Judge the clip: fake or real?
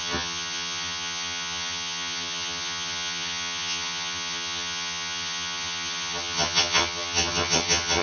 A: fake